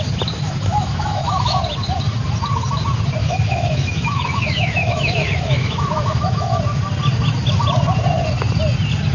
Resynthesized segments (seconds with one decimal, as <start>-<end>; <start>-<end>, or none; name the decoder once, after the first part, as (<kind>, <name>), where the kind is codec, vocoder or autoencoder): 0.7-1.6 (autoencoder, DAC-VAE); 3.2-6.6